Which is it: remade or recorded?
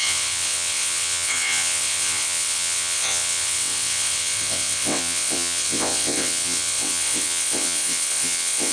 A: remade